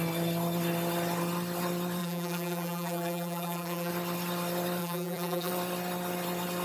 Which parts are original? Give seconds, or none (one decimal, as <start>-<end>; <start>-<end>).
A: 0.0-2.0; 3.9-4.8; 5.5-6.6